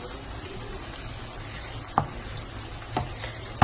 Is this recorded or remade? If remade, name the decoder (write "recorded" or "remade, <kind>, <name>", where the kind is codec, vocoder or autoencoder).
recorded